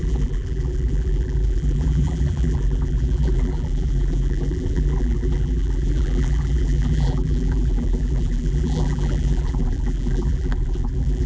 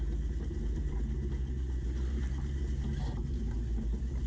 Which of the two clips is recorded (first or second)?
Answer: second